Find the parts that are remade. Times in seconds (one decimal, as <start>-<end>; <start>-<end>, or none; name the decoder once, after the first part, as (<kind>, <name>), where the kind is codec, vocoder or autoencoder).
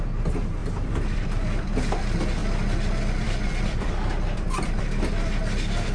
0.6-2.0 (vocoder, BigVGAN v2); 2.4-4.8